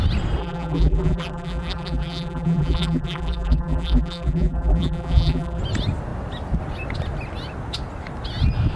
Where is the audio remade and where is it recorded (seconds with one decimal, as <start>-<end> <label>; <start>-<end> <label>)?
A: 0.0-0.4 recorded; 0.4-5.6 remade; 5.6-8.8 recorded